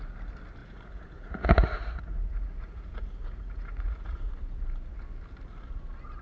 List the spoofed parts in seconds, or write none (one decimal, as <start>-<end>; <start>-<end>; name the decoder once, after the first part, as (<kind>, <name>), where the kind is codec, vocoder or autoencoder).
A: 0.6-4.3 (vocoder, Vocos)